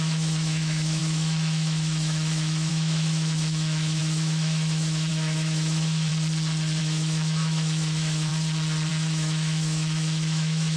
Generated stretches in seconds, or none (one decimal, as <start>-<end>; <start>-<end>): 0.0-6.1; 6.8-8.3; 8.9-10.8